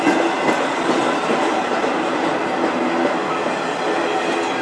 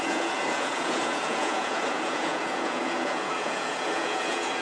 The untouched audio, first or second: first